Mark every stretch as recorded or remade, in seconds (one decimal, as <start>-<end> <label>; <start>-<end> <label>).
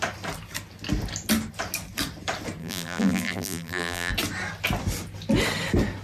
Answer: 0.0-2.6 recorded; 2.6-4.1 remade; 4.1-6.0 recorded